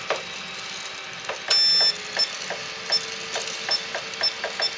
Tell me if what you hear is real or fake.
real